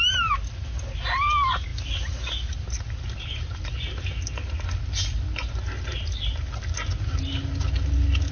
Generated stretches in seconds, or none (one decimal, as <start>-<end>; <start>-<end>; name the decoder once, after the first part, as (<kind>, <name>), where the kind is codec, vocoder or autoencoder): none